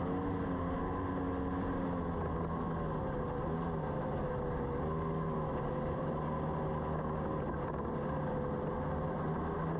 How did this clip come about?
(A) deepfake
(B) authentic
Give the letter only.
B